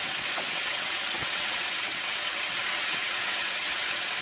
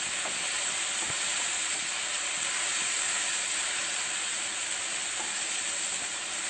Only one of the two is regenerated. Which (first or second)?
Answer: first